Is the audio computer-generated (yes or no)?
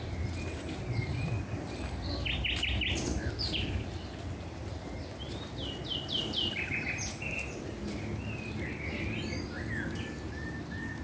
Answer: no